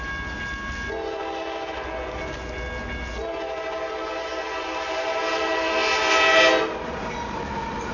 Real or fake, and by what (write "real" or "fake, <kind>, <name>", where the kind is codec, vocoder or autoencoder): real